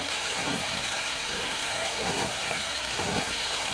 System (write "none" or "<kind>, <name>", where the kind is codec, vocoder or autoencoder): codec, SNAC